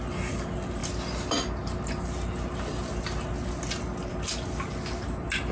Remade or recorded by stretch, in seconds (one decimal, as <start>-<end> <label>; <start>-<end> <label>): 0.0-5.5 recorded